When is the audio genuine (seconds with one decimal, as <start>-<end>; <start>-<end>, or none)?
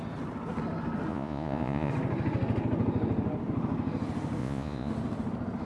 0.0-1.1; 1.9-4.4; 4.9-5.7